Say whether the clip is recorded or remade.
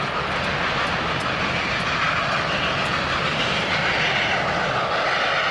recorded